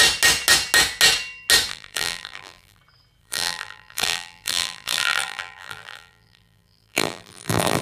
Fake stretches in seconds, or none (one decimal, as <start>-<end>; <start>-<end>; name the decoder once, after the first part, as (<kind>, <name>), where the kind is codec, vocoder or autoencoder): 1.7-2.8 (vocoder, BigVGAN v2); 3.2-7.8